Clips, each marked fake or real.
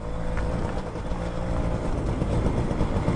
real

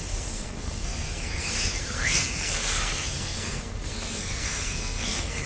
fake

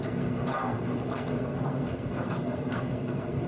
fake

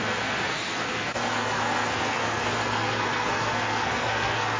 fake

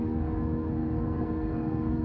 fake